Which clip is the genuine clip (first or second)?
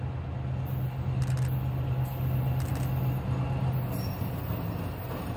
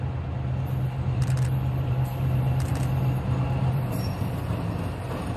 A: first